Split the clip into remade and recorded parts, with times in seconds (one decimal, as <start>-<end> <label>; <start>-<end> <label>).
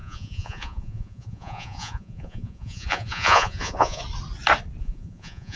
0.0-4.0 remade; 4.0-4.8 recorded; 4.8-5.6 remade